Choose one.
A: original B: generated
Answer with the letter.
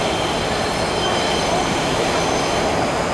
A